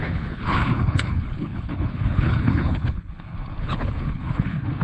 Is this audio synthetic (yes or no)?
yes